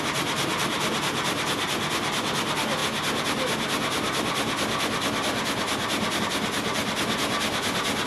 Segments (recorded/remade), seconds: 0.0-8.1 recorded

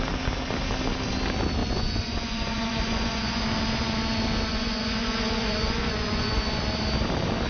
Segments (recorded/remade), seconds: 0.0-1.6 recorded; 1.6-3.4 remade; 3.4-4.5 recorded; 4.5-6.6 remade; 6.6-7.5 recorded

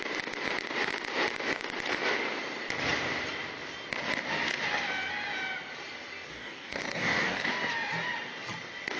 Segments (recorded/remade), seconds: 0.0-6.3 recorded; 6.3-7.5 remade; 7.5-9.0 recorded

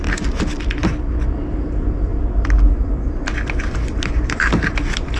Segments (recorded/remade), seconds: 0.0-0.8 remade; 0.8-1.3 recorded; 1.3-2.1 remade; 2.1-4.1 recorded; 4.1-5.2 remade

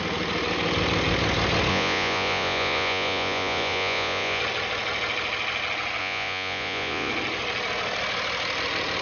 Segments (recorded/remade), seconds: 0.0-1.7 recorded; 1.7-4.4 remade; 4.4-6.0 recorded; 6.0-7.1 remade; 7.1-9.0 recorded